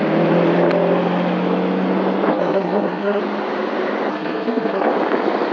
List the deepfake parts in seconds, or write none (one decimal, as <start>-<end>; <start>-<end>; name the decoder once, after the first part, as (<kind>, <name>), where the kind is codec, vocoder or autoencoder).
2.3-3.2 (codec, SNAC); 4.1-4.9